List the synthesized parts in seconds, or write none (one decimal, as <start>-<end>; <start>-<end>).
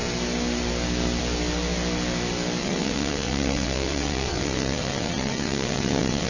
2.6-6.3